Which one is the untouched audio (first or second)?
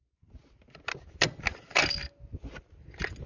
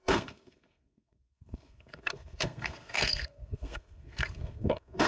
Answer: first